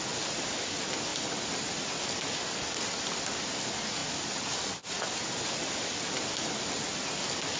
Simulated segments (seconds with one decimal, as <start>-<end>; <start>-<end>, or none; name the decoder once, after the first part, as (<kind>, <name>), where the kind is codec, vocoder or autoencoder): 1.1-2.0 (vocoder, BigVGAN v2); 4.0-6.5